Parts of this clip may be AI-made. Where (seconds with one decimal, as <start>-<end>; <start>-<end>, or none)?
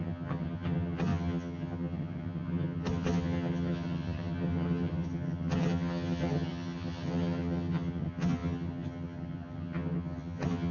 0.0-10.7